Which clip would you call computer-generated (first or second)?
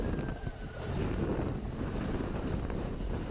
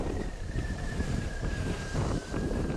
second